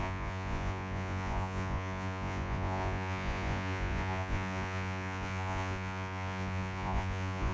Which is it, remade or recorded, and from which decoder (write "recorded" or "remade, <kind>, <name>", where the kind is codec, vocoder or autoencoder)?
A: remade, vocoder, Vocos